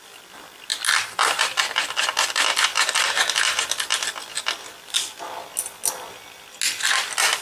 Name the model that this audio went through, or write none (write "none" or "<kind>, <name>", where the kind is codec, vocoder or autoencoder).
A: none